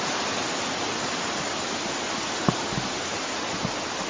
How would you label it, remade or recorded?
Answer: recorded